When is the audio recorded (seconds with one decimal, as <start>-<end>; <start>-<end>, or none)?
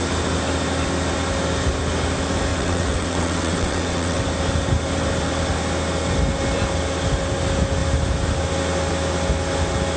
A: 0.0-2.5; 4.2-10.0